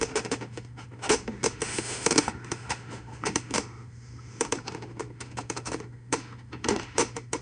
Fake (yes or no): yes